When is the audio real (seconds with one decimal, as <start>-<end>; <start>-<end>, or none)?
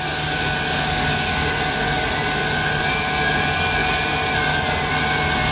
0.0-5.5